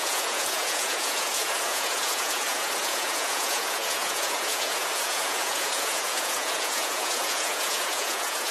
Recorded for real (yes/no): no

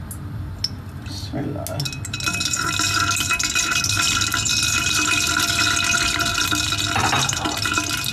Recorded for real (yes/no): yes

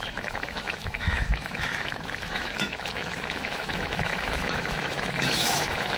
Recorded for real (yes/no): no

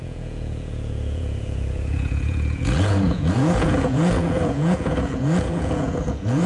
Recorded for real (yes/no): no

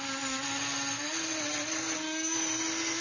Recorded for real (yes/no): yes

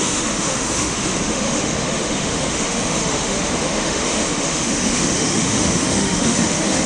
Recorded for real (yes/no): no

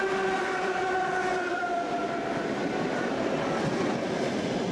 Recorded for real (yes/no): no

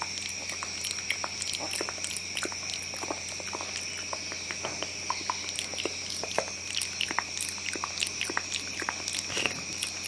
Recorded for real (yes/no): yes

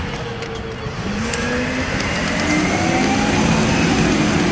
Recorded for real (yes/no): yes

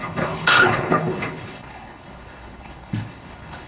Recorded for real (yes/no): no